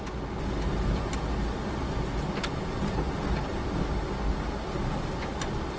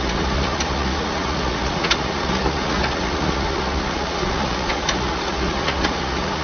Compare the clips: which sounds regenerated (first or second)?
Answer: second